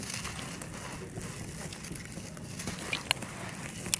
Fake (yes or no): no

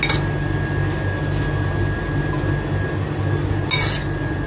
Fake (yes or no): no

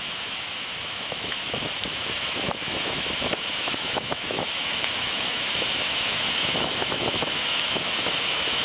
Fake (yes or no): yes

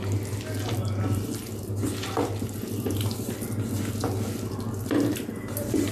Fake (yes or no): no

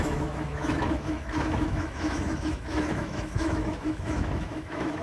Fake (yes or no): yes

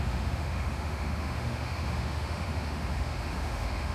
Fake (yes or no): yes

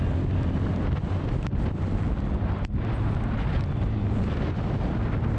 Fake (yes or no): no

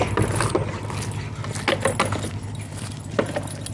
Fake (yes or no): no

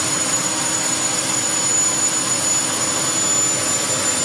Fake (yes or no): no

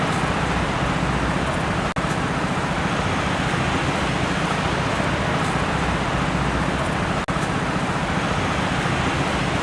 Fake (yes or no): no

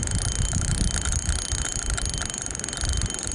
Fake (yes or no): no